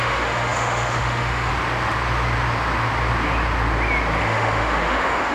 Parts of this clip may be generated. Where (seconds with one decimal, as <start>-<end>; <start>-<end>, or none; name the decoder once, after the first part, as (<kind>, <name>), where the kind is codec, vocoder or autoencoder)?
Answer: 0.0-1.5 (autoencoder, DAC-VAE); 4.2-5.3